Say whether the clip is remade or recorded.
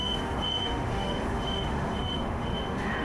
remade